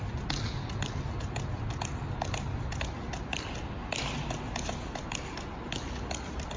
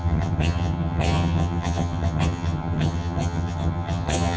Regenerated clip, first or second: second